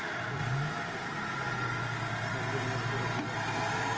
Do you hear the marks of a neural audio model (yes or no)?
no